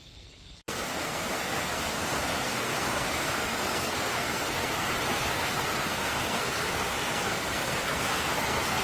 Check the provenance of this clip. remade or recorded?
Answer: remade